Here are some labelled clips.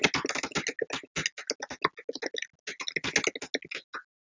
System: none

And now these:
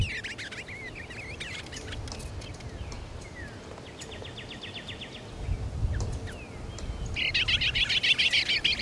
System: none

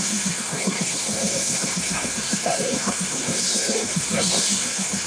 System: codec, SNAC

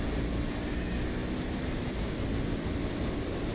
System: none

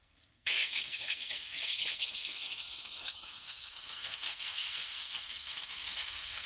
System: codec, SNAC